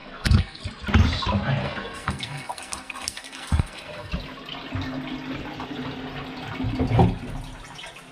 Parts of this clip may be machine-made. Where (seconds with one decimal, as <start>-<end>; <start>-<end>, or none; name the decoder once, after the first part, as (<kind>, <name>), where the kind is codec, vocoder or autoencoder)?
0.0-0.6 (codec, SNAC); 1.6-4.1